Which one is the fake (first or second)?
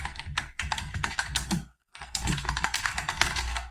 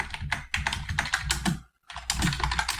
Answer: first